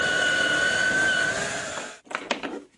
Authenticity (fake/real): real